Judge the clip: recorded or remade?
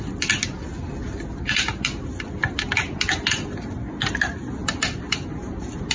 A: recorded